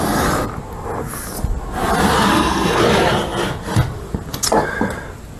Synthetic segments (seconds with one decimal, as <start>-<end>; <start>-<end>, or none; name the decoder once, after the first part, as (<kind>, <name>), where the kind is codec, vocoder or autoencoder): 2.3-2.8 (codec, SNAC)